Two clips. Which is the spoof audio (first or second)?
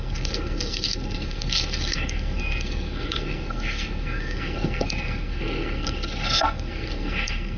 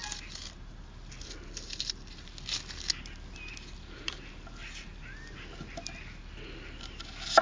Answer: first